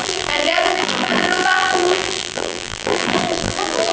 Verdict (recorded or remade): remade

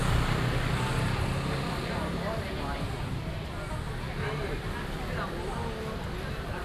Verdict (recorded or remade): recorded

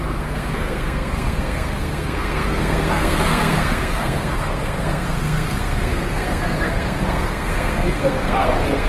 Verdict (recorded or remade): remade